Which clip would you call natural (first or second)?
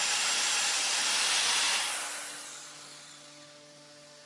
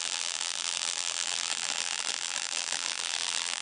first